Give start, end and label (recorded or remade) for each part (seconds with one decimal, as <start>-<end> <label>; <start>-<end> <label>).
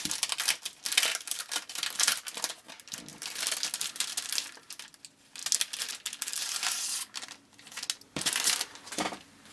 0.0-1.1 recorded; 1.1-1.7 remade; 1.7-9.5 recorded